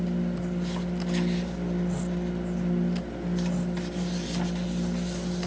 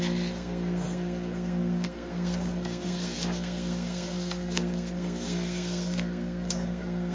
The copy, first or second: second